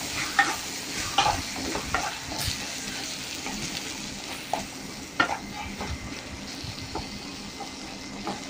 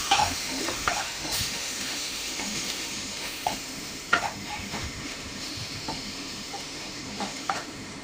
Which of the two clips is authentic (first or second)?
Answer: first